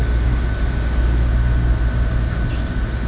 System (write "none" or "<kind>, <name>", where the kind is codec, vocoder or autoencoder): none